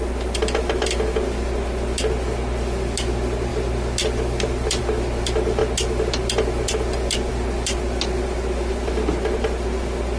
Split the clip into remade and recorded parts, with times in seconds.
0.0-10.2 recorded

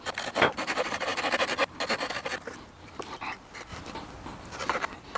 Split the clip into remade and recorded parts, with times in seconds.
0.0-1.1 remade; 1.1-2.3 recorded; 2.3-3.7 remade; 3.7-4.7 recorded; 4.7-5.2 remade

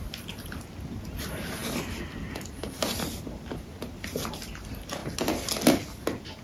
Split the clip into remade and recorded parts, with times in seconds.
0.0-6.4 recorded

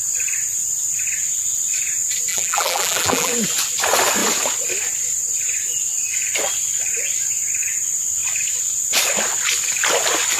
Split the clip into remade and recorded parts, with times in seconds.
0.0-2.3 recorded; 2.3-3.3 remade; 3.3-10.4 recorded

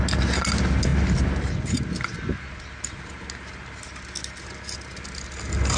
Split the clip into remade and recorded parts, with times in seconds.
0.0-5.8 recorded